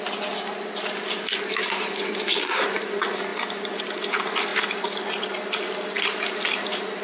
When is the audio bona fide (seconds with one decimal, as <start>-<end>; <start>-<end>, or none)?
0.0-7.0